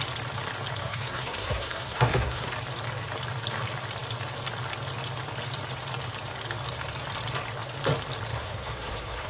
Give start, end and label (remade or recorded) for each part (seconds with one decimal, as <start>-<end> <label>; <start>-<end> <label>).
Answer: 0.0-0.8 recorded; 0.8-2.5 remade; 2.5-8.3 recorded; 8.3-9.3 remade